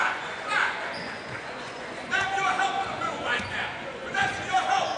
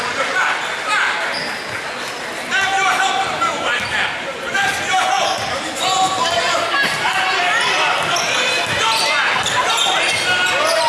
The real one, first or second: second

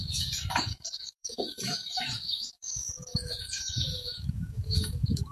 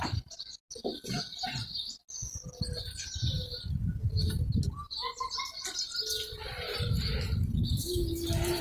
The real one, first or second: second